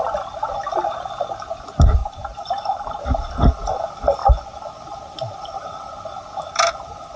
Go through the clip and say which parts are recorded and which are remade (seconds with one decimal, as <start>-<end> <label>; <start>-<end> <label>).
0.0-2.0 recorded; 2.0-3.0 remade; 3.0-7.2 recorded